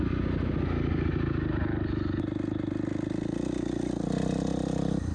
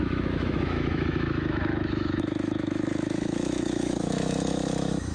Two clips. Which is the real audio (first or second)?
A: first